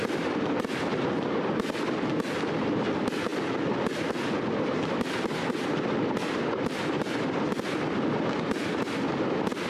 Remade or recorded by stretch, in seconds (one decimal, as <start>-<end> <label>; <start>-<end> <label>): 0.0-9.7 recorded